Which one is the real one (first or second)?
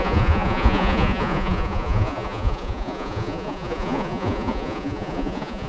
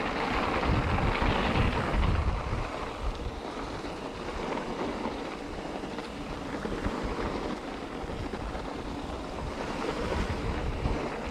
second